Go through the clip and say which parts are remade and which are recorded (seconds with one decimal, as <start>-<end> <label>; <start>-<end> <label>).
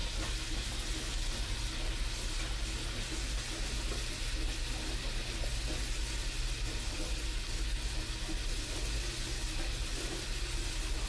0.0-11.1 recorded